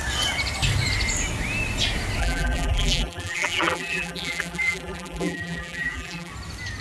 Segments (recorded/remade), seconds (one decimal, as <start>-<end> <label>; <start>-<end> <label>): 0.0-2.2 recorded; 2.2-6.3 remade; 6.3-6.8 recorded